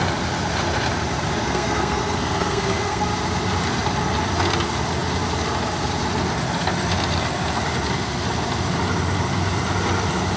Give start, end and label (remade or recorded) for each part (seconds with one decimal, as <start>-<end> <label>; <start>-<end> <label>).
0.0-1.4 recorded; 1.4-3.0 remade; 3.0-10.4 recorded